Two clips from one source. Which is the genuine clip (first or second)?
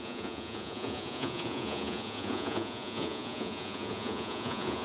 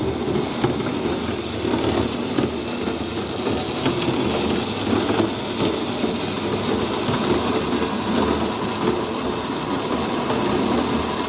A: second